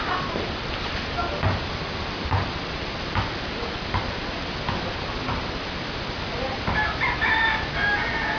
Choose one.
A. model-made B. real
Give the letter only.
B